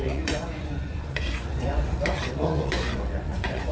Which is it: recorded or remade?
remade